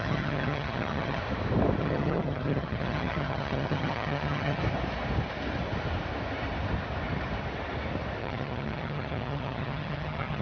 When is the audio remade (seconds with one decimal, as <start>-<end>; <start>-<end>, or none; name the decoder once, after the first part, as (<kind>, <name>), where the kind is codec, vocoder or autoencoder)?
0.0-1.2 (vocoder, HiFi-GAN); 1.8-4.6; 8.2-10.4